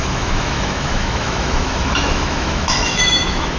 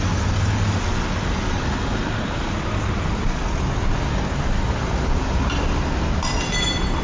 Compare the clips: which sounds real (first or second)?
second